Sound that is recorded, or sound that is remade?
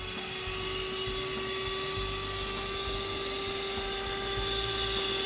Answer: recorded